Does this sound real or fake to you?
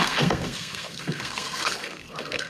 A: fake